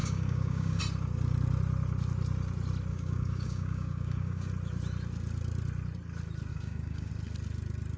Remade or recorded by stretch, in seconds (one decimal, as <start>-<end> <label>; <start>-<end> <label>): 0.0-0.8 remade; 0.8-2.9 recorded; 2.9-4.5 remade; 4.5-6.5 recorded; 6.5-7.1 remade; 7.1-8.0 recorded